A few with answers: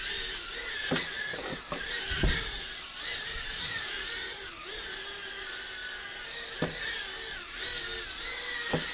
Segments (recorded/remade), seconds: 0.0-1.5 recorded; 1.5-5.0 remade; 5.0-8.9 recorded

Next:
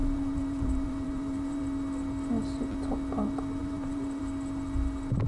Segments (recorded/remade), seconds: 0.0-1.6 remade; 1.6-3.6 recorded; 3.6-4.2 remade; 4.2-5.3 recorded

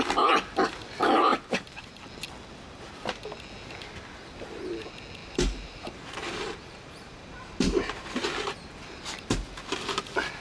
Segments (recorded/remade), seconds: 0.0-1.3 recorded; 1.3-2.1 remade; 2.1-5.2 recorded; 5.2-9.3 remade; 9.3-10.4 recorded

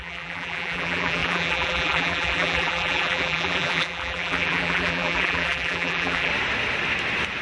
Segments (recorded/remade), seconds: 0.0-6.3 remade; 6.3-7.4 recorded